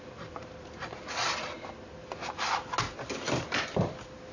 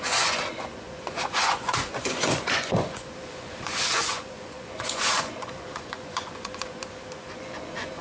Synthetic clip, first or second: second